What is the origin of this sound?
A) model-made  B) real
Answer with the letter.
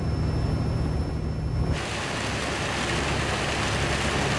B